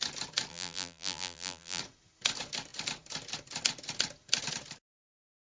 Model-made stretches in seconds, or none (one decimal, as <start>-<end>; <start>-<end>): 0.5-1.8